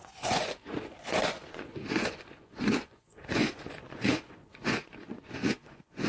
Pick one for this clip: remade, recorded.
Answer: remade